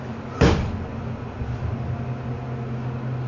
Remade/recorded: recorded